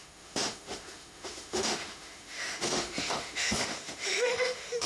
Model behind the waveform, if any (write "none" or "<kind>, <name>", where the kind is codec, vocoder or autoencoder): autoencoder, DAC-VAE